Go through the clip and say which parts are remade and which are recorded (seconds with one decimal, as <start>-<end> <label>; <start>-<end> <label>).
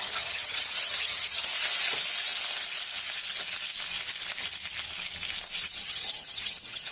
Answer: 0.0-1.5 remade; 1.5-5.6 recorded; 5.6-6.9 remade